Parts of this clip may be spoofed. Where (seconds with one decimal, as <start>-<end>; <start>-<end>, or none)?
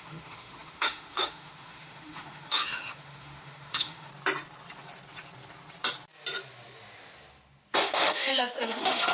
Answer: 0.0-4.1; 7.8-9.1